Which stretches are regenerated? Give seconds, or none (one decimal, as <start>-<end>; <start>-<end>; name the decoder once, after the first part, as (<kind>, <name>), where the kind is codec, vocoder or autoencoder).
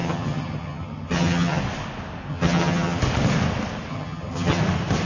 0.0-1.6 (vocoder, HiFi-GAN); 2.3-3.0; 3.9-4.6